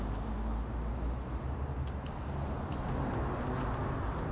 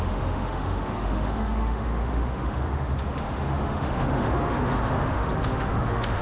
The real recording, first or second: first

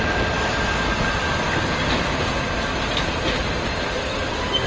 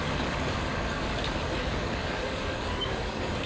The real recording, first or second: first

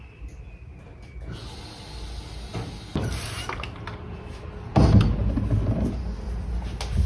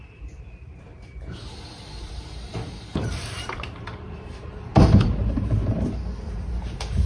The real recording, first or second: first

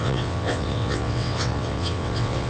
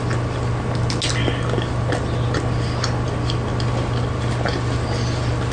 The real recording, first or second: second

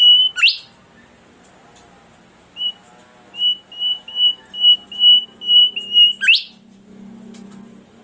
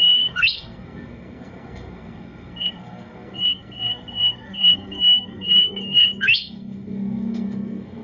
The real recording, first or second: first